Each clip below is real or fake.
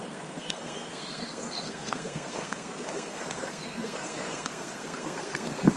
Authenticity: fake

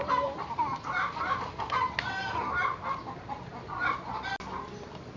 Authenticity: real